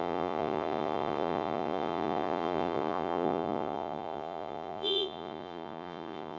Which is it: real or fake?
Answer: fake